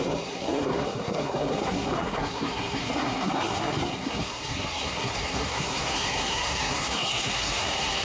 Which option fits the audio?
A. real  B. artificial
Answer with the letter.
B